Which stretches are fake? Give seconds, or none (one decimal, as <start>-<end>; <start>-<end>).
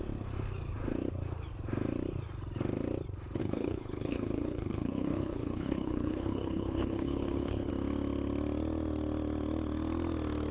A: 3.4-7.7